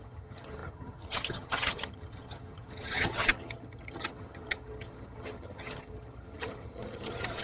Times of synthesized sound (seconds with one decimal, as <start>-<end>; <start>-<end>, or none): 0.0-7.4